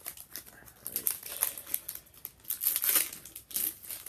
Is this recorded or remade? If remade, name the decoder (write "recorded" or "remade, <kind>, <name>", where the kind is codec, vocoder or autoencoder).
recorded